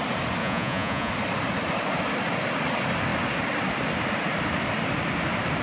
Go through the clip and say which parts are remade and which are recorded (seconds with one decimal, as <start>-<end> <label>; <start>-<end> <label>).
0.0-0.4 recorded; 0.4-1.1 remade; 1.1-5.6 recorded